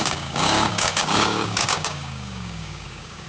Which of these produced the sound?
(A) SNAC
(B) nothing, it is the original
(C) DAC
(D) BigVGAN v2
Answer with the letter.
C